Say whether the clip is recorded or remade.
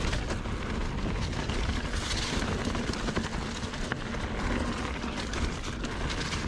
recorded